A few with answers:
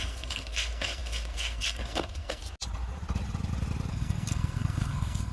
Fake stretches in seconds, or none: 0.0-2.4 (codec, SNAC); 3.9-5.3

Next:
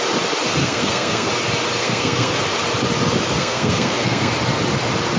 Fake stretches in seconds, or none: 0.6-1.3 (codec, SNAC); 1.8-2.3; 3.4-4.3